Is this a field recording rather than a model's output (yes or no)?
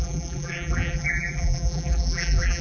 no